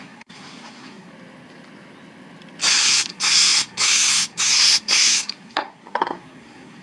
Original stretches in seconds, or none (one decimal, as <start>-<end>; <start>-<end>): 1.1-2.7